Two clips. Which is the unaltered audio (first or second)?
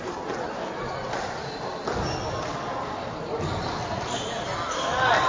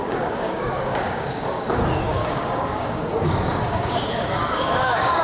first